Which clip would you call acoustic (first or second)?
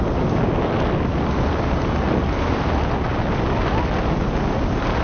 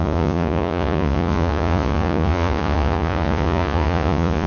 first